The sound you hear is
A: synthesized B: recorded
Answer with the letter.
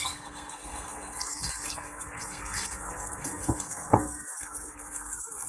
A